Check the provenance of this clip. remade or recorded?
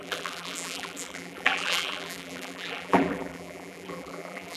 remade